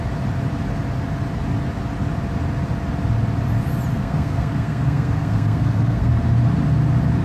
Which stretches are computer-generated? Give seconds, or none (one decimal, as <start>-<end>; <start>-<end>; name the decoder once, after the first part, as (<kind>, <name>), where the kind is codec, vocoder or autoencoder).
3.9-6.1 (codec, SNAC)